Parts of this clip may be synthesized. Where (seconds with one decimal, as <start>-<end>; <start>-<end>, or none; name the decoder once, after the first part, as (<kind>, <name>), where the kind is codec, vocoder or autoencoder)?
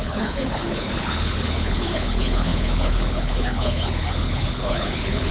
0.0-5.3 (codec, HILCodec)